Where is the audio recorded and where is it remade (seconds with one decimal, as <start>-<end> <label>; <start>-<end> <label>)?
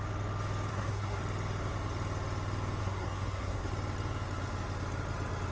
0.0-0.7 recorded; 0.7-1.2 remade; 1.2-2.8 recorded; 2.8-3.7 remade; 3.7-5.5 recorded